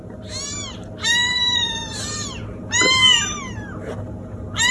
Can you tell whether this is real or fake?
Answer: fake